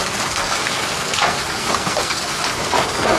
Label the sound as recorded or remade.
remade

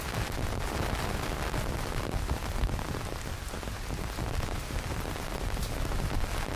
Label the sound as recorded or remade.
recorded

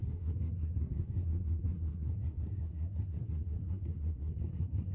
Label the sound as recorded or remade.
remade